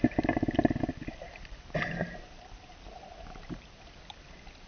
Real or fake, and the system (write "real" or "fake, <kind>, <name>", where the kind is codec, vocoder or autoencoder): real